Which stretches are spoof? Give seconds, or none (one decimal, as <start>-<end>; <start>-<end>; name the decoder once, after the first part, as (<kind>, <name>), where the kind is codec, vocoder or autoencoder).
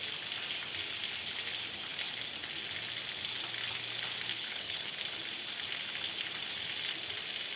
4.3-4.9 (codec, HILCodec)